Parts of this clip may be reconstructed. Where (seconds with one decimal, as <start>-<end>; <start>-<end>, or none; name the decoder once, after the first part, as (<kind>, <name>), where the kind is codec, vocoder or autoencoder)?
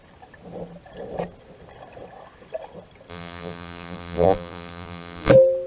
3.1-5.3 (vocoder, BigVGAN v2)